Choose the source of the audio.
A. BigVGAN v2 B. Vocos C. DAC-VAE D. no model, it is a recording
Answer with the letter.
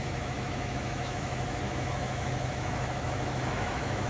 C